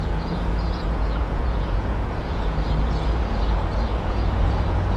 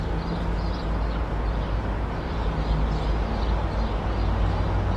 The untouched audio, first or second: second